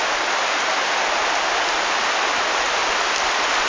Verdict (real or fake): real